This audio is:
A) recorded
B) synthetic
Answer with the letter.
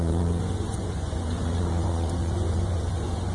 B